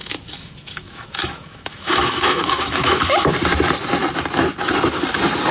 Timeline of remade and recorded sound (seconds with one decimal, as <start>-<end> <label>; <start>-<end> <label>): 0.0-3.3 remade; 3.3-5.5 recorded